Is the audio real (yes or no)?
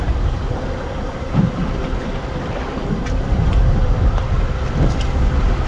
yes